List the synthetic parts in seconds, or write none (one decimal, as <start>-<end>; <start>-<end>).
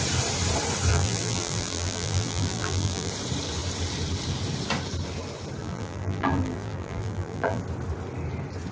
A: 0.9-3.1; 5.6-7.6